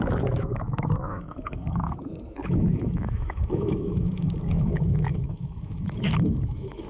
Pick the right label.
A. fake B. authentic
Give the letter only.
A